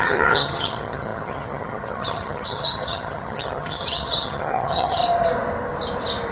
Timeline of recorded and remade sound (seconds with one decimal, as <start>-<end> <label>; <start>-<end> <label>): 0.0-5.0 remade; 5.0-6.3 recorded